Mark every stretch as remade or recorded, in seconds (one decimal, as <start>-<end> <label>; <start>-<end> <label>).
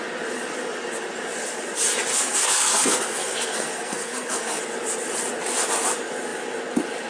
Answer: 0.0-2.1 recorded; 2.1-4.6 remade; 4.6-7.1 recorded